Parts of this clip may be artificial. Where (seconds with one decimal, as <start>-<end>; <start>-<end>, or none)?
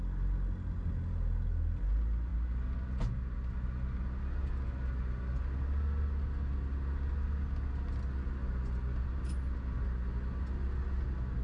none